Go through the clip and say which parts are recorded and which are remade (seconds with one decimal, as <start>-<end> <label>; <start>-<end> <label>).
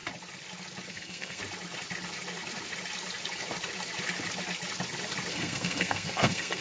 0.0-0.9 recorded; 0.9-1.4 remade; 1.4-5.3 recorded; 5.3-6.6 remade